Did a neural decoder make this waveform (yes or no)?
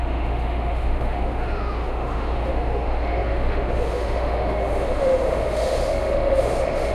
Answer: yes